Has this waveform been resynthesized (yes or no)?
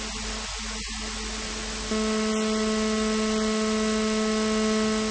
no